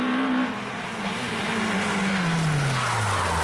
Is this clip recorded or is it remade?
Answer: recorded